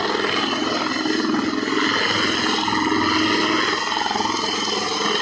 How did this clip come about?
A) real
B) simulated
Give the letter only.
A